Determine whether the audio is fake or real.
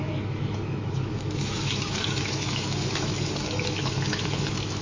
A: fake